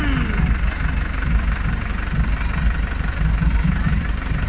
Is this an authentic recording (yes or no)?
yes